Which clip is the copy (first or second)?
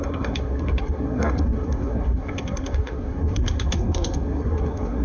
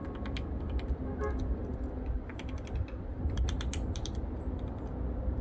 first